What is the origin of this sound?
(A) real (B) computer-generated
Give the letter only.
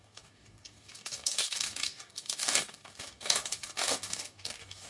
B